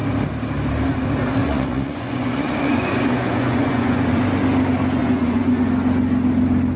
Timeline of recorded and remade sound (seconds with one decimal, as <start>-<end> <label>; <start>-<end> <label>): 0.0-1.4 recorded; 1.4-4.2 remade; 4.2-5.0 recorded; 5.0-5.7 remade; 5.7-6.8 recorded